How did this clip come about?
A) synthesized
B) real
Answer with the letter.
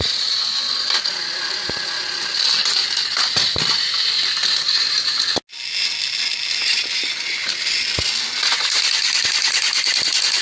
B